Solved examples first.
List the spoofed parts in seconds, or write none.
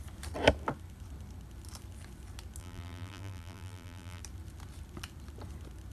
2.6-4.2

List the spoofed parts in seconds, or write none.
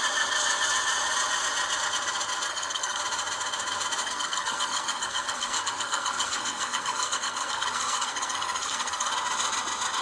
2.5-3.0; 4.0-9.1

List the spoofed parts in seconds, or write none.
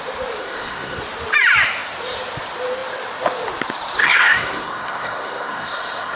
0.4-1.0; 4.0-6.2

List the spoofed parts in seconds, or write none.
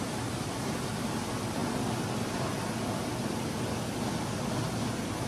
none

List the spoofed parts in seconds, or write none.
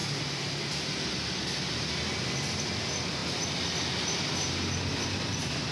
none